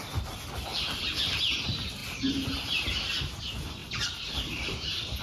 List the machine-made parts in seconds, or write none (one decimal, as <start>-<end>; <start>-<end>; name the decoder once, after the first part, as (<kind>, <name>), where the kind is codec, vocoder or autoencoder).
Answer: 0.7-1.4 (vocoder, BigVGAN v2); 3.8-5.2